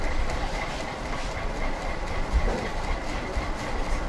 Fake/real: fake